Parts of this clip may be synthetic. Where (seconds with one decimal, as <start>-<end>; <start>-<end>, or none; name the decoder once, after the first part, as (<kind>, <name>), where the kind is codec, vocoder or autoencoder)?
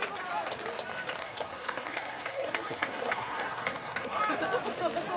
1.2-4.2 (codec, SNAC)